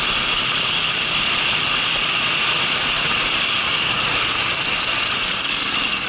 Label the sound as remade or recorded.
recorded